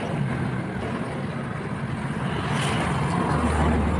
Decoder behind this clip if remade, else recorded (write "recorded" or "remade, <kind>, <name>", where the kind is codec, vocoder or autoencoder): recorded